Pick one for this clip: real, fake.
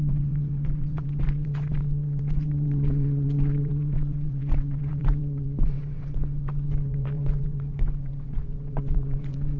fake